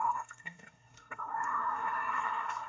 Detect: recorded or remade remade